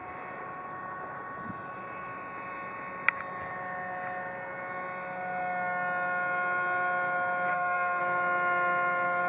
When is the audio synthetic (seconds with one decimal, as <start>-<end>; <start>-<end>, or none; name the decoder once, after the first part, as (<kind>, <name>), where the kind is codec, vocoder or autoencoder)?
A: 7.5-8.0 (codec, SNAC)